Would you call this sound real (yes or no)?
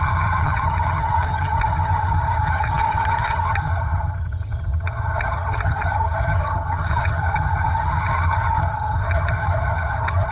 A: no